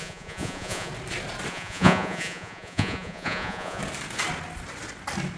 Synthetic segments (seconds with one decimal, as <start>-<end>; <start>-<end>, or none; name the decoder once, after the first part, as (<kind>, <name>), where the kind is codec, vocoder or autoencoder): 0.0-0.9 (vocoder, Vocos); 1.5-3.8